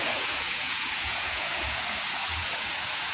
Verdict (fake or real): fake